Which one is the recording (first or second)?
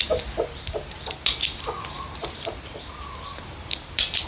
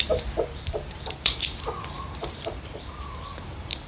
first